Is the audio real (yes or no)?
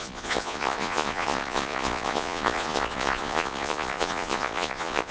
no